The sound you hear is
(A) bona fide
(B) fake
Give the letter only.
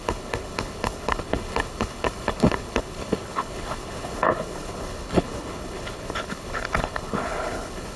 B